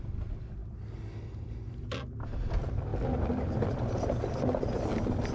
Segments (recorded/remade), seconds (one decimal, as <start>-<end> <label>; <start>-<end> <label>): 0.0-5.3 recorded